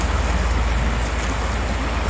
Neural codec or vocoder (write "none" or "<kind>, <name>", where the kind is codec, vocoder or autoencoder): none